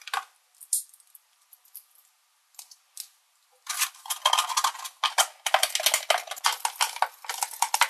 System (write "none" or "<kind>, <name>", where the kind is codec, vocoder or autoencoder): none